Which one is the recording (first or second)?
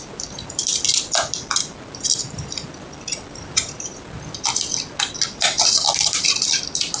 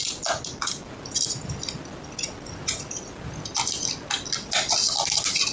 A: second